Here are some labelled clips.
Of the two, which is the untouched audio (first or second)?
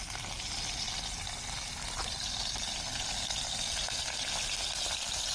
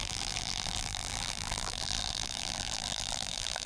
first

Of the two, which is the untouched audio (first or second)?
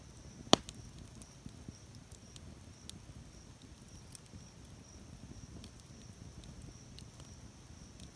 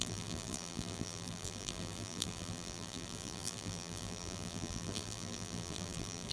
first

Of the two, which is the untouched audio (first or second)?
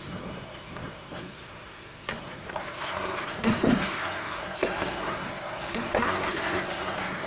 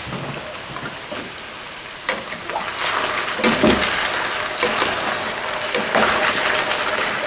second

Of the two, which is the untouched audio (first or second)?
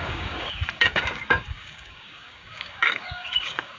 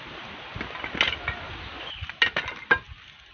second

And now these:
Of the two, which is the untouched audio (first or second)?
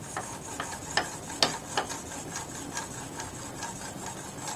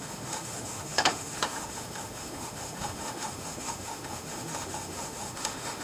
first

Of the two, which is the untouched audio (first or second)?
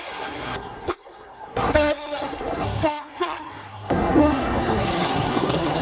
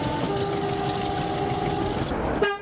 second